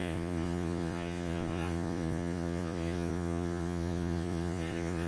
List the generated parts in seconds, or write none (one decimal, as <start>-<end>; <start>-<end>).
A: 0.0-5.1